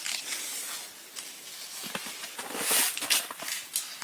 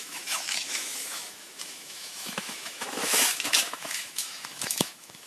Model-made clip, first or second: second